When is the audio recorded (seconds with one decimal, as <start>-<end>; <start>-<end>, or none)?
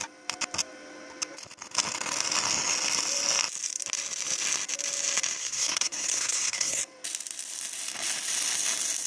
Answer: 0.0-5.4; 6.8-9.1